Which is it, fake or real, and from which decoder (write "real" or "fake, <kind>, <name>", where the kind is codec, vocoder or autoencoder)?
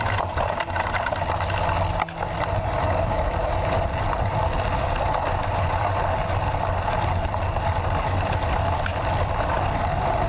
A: real